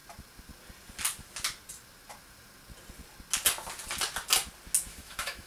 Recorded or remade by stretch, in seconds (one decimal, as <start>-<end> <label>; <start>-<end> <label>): 0.0-4.9 recorded; 4.9-5.5 remade